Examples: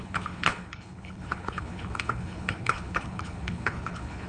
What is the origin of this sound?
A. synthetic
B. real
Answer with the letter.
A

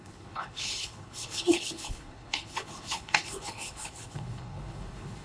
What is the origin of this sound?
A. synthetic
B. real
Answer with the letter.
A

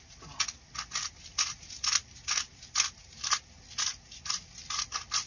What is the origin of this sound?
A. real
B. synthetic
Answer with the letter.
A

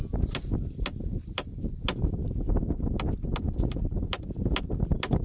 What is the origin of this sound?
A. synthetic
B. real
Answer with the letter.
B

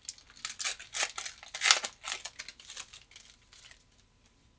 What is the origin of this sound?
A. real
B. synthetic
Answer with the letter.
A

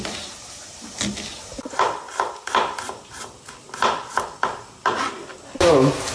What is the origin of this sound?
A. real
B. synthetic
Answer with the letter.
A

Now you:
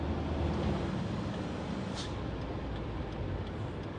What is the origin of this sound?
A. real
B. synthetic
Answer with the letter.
A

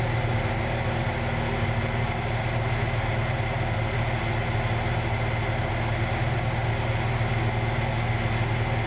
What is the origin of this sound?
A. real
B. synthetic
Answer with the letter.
A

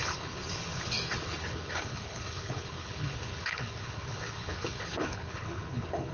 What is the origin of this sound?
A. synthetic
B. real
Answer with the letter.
A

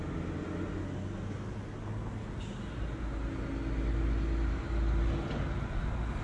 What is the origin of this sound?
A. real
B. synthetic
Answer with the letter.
A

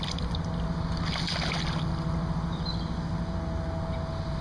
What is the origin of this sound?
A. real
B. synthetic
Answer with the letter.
A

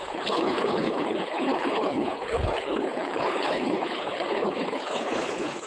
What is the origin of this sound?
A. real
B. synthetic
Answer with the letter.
B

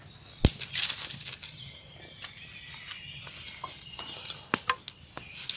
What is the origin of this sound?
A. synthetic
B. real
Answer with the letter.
B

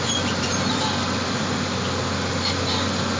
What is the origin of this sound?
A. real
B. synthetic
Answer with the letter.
A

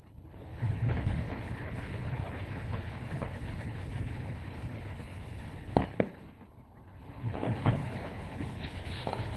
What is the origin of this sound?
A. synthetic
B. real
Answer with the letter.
A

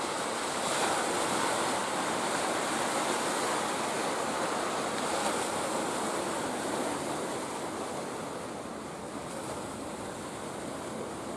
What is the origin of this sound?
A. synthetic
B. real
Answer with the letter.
B